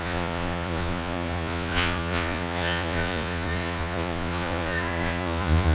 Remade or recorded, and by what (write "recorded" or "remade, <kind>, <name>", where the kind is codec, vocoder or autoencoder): remade, vocoder, Vocos